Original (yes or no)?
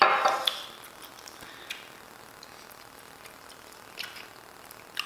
yes